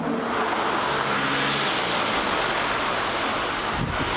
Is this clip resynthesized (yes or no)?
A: no